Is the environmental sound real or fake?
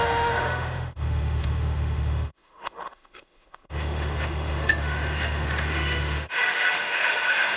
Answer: fake